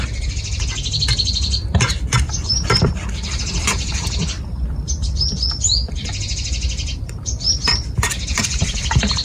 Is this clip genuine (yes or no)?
no